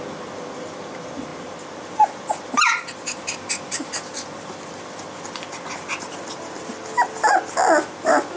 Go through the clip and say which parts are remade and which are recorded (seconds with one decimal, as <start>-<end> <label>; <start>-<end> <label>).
0.0-8.4 recorded